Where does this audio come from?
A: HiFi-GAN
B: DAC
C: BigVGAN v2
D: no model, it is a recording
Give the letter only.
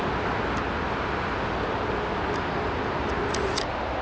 D